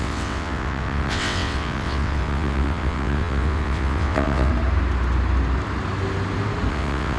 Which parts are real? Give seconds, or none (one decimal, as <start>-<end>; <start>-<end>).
4.5-6.7